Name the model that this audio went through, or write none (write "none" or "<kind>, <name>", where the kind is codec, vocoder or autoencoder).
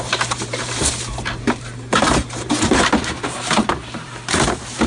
vocoder, BigVGAN v2